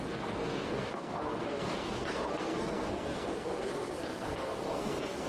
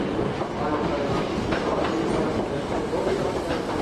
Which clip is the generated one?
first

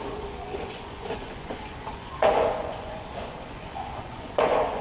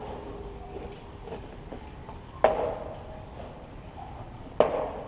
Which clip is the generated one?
first